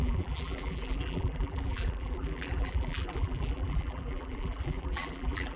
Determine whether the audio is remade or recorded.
remade